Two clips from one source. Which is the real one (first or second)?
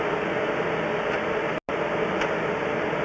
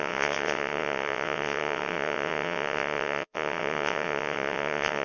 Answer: first